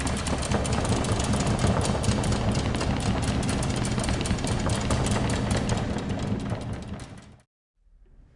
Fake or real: real